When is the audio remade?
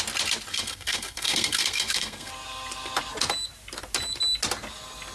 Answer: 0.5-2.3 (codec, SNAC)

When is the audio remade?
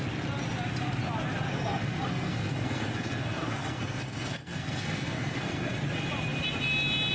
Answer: 1.5-5.8 (codec, SNAC)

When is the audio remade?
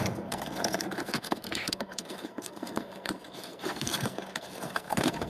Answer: 0.0-5.3 (codec, SNAC)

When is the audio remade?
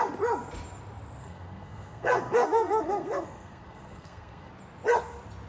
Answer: 1.2-4.5 (codec, SNAC)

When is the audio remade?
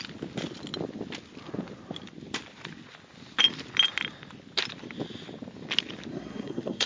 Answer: 6.1-6.9 (codec, SNAC)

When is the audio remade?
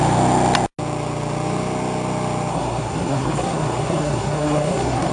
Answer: 2.5-5.1 (codec, SNAC)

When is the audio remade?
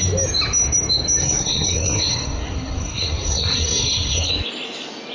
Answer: 1.2-4.3 (codec, SNAC)